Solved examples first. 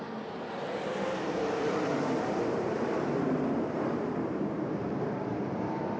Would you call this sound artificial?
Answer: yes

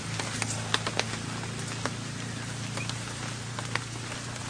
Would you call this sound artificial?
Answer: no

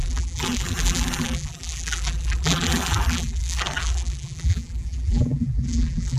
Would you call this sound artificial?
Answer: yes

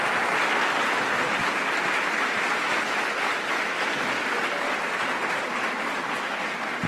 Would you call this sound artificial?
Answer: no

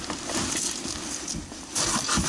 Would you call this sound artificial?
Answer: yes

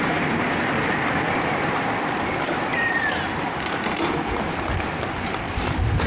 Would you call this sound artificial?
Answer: yes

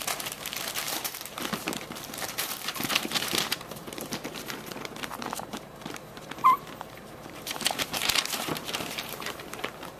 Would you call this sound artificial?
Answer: yes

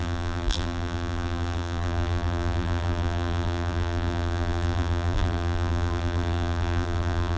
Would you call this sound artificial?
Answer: yes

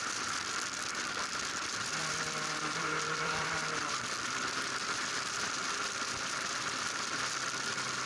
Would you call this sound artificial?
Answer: yes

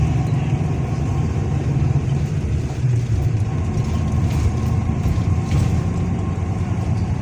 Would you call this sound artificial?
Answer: yes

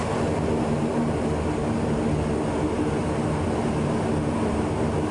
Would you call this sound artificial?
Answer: no